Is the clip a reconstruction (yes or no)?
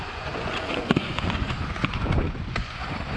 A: yes